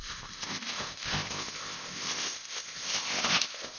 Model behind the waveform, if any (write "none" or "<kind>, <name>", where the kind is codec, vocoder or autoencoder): codec, ZipCodec